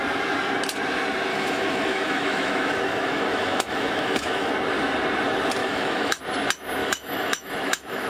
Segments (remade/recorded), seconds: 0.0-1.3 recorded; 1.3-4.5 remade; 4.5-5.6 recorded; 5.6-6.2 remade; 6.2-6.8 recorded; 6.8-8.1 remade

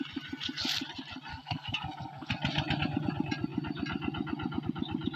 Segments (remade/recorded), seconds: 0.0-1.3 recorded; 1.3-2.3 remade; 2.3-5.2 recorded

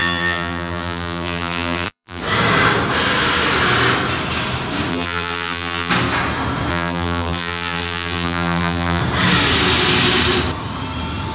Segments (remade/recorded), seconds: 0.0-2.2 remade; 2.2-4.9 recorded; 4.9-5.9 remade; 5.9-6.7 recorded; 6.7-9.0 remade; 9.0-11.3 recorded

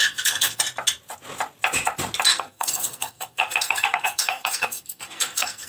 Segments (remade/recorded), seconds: 0.0-0.6 remade; 0.6-2.3 recorded; 2.3-5.7 remade